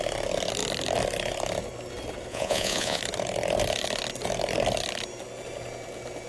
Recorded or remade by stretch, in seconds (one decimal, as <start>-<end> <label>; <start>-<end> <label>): 0.0-2.3 recorded; 2.3-3.0 remade; 3.0-6.3 recorded